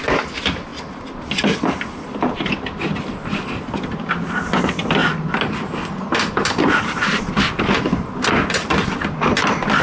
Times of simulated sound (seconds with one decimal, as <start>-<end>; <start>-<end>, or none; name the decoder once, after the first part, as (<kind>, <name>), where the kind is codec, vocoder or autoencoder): none